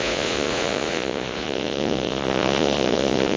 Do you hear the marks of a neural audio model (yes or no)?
yes